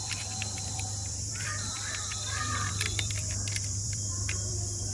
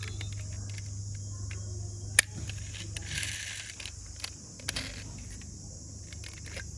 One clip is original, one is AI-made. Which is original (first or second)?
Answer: second